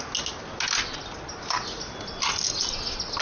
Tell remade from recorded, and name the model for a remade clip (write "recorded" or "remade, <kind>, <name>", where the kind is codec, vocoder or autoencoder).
recorded